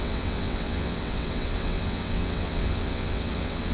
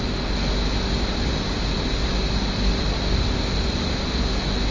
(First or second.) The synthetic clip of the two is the first